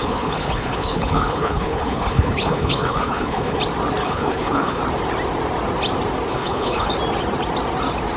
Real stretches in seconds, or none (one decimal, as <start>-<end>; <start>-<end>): 3.6-4.0; 4.8-6.3; 6.9-8.2